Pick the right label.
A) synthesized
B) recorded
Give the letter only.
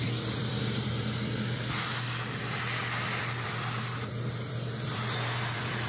A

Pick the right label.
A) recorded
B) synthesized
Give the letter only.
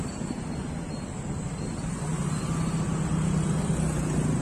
A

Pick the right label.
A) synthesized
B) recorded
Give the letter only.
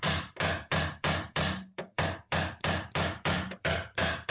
A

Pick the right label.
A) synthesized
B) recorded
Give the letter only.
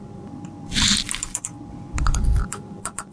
A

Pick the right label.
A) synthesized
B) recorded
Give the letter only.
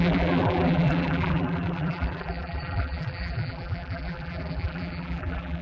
A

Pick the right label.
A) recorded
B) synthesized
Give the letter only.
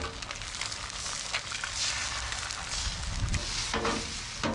A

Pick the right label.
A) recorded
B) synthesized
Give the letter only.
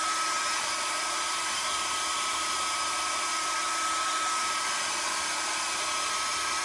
B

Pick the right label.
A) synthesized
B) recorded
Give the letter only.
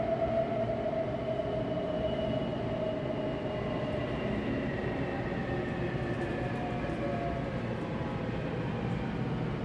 B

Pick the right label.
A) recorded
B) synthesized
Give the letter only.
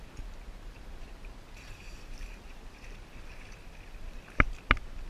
B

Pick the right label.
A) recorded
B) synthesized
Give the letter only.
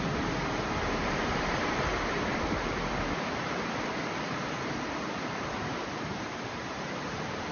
B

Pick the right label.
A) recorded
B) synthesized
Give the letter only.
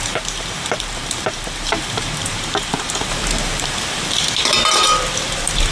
B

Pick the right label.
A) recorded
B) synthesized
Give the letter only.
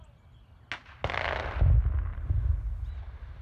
A